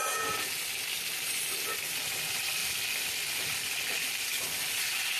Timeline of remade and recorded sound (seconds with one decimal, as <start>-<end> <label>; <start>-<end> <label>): 0.0-5.2 recorded